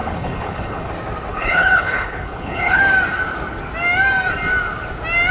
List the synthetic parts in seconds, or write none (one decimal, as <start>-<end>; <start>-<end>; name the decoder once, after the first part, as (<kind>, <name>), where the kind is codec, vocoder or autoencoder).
0.0-0.9 (codec, HILCodec); 1.3-2.8